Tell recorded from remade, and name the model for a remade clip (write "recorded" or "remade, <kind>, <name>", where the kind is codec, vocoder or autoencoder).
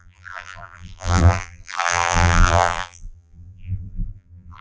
remade, vocoder, BigVGAN v2